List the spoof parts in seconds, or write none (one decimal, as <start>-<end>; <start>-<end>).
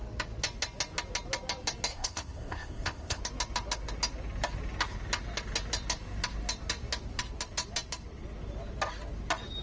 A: 1.9-3.2